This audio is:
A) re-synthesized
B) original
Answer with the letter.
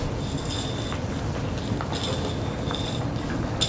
B